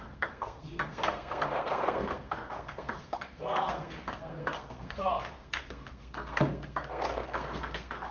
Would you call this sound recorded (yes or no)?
no